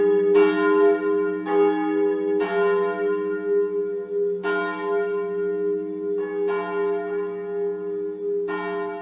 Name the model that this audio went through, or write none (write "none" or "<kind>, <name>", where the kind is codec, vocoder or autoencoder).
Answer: none